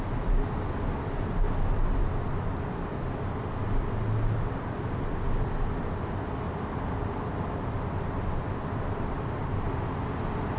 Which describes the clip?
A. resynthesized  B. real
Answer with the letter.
B